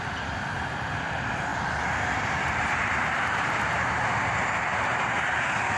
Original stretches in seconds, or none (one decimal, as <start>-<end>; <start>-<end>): 0.0-1.5; 3.9-5.8